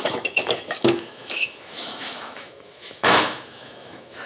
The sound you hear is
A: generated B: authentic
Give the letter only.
A